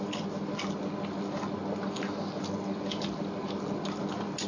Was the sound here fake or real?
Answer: real